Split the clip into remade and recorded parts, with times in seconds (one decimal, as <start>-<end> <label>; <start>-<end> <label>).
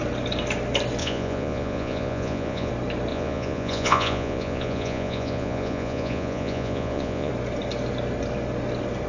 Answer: 0.0-1.0 recorded; 1.0-2.7 remade; 2.7-3.1 recorded; 3.1-7.3 remade; 7.3-9.1 recorded